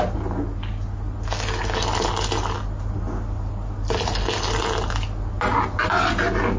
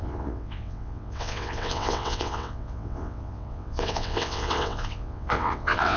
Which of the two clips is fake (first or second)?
second